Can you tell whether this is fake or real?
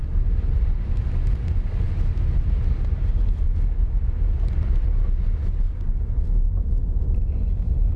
real